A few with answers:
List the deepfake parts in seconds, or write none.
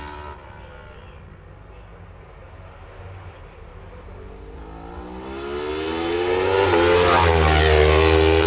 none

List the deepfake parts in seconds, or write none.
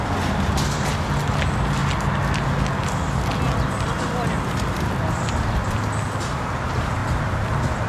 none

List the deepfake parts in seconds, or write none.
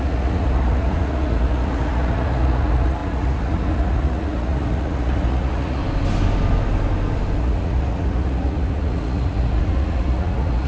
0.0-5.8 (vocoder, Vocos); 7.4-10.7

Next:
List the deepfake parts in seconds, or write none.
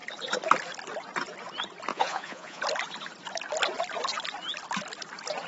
1.9-2.6 (vocoder, Vocos)